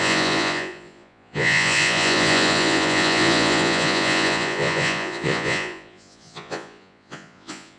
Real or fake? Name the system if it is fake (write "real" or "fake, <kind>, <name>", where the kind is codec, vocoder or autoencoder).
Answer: fake, vocoder, Vocos